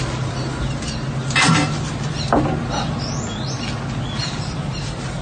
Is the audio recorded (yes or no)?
yes